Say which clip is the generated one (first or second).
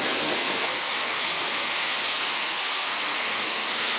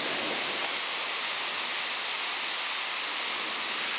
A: first